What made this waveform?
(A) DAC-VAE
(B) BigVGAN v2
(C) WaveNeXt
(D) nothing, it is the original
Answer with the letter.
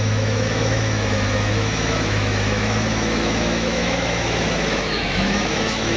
A